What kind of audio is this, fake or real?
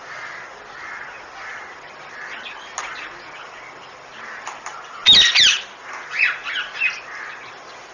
real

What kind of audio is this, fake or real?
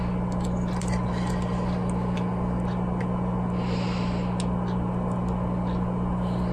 real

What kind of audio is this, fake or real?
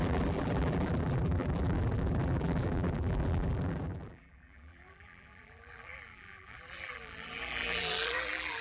fake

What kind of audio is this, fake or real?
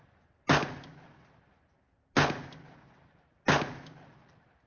real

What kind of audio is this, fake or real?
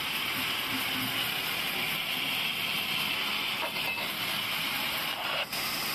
real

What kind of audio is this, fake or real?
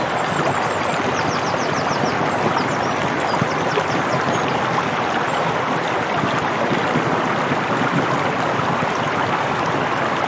real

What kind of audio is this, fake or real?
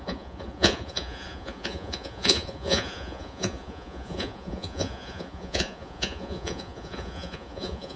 fake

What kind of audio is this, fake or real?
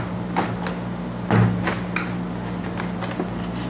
real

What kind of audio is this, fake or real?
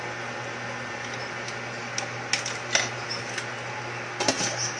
real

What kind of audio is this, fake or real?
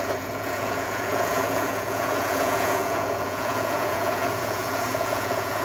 fake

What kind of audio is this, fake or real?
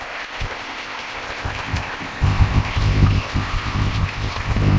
fake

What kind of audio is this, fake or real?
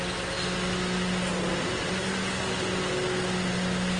real